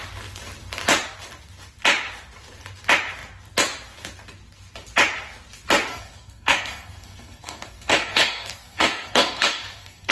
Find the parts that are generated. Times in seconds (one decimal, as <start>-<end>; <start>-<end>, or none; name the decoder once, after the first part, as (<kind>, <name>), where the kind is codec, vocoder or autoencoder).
5.9-10.1 (codec, SNAC)